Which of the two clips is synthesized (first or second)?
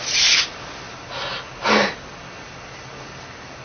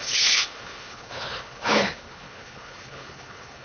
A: second